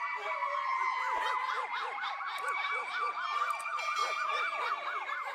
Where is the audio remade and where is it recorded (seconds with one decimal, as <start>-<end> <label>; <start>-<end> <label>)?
0.0-5.3 recorded